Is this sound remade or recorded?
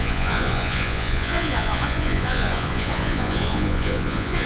remade